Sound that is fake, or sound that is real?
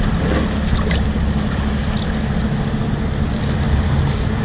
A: real